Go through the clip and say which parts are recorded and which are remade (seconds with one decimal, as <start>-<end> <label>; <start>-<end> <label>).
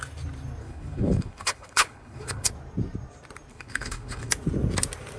0.0-0.6 recorded; 0.6-2.5 remade; 2.5-3.5 recorded; 3.5-4.3 remade; 4.3-5.2 recorded